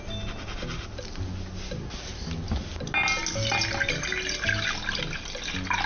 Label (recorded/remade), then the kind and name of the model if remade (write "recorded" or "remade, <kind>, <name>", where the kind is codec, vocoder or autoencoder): recorded